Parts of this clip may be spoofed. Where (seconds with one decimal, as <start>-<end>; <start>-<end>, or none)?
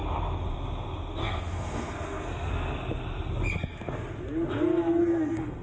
1.2-2.5; 5.0-5.6